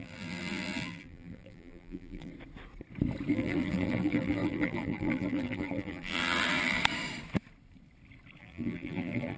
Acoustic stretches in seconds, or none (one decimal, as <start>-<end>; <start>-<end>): 2.3-3.3; 6.8-8.4